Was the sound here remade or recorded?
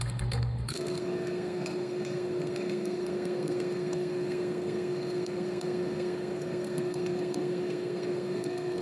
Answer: remade